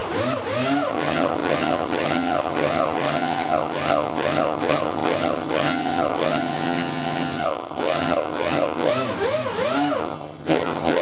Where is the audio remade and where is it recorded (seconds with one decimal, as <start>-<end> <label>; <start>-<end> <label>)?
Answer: 0.0-0.9 recorded; 0.9-8.9 remade; 8.9-10.0 recorded; 10.0-11.0 remade